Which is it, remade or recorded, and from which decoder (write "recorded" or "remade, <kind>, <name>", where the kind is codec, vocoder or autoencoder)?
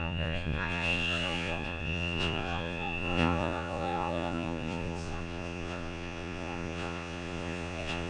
remade, vocoder, Vocos